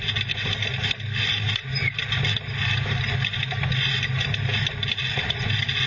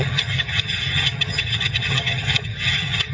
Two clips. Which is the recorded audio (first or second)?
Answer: first